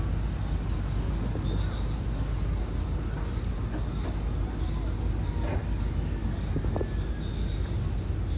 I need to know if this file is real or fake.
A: real